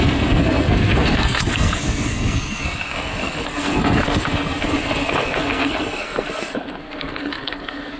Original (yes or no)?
no